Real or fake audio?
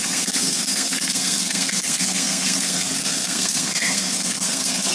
fake